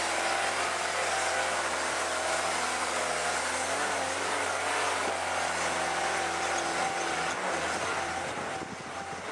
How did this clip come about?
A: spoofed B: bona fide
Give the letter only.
B